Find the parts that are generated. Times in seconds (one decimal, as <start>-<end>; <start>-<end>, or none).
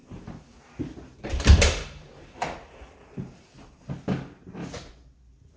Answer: 0.0-0.6; 1.3-3.9